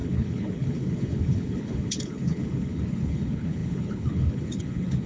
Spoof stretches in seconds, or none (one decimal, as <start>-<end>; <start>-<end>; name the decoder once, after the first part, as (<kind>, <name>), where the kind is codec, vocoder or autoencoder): 0.0-5.1 (codec, HILCodec)